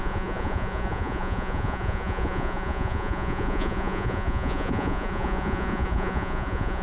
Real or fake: fake